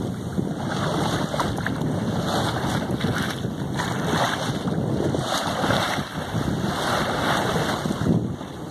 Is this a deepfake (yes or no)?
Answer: no